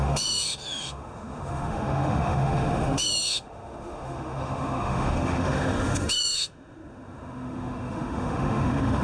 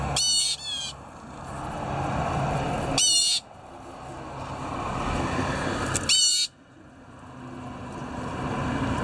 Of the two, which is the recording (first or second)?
second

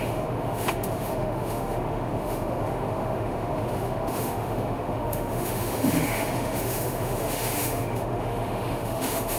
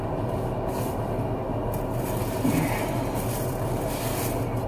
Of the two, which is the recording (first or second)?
second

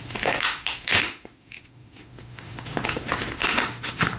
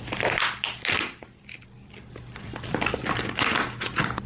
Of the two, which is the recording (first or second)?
second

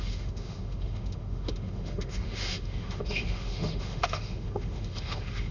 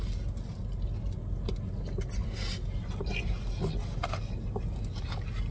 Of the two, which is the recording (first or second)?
second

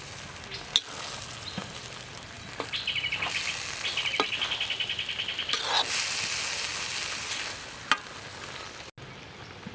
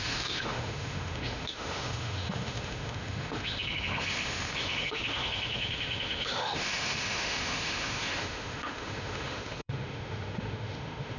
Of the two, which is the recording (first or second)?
first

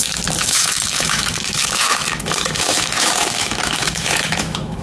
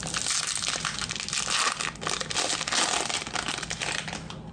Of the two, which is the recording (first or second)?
second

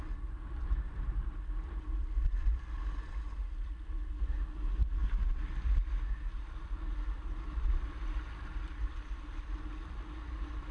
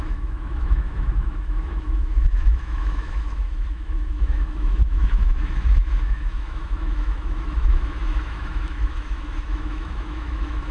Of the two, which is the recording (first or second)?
first